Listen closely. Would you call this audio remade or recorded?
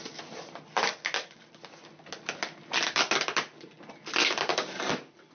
recorded